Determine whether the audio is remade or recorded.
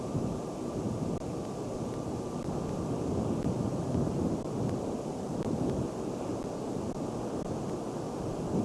remade